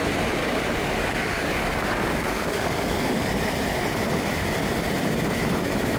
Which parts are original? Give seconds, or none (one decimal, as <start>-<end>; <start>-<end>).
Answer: 0.0-0.4; 3.4-6.0